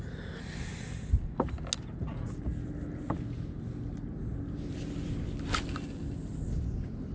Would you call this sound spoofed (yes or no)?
no